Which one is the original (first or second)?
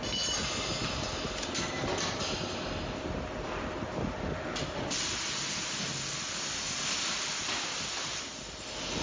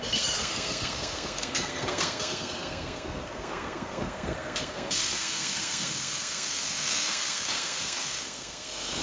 first